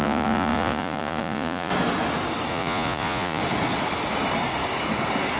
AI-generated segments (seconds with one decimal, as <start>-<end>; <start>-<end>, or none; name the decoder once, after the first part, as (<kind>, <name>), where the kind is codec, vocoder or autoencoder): 0.0-1.7 (vocoder, Vocos); 2.5-3.4